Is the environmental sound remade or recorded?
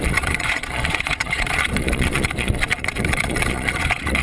remade